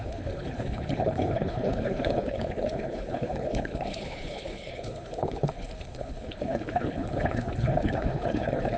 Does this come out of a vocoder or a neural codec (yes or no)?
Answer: yes